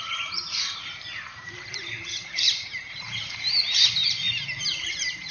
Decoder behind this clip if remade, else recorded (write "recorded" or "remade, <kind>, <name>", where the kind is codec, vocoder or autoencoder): remade, vocoder, BigVGAN v2